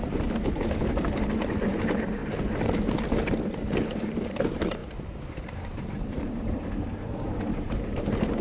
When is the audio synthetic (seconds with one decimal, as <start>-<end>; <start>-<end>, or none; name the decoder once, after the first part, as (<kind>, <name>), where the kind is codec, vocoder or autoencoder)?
0.0-2.2 (vocoder, BigVGAN v2); 3.7-8.4